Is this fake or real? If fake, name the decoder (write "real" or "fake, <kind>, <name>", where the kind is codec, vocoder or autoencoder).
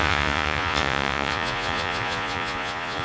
fake, vocoder, Vocos